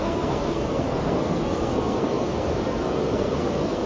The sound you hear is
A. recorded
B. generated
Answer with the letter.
B